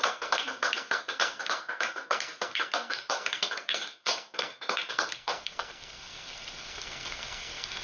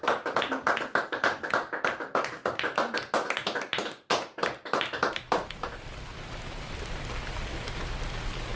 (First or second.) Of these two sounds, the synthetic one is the first